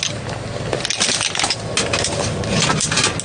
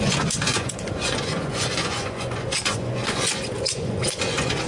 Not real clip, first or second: second